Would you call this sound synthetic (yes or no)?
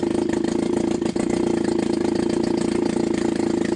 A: no